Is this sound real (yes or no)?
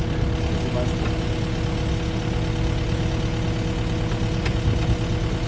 yes